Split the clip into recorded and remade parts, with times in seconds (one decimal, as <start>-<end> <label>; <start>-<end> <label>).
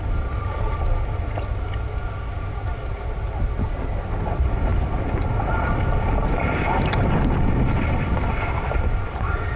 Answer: 0.0-9.6 recorded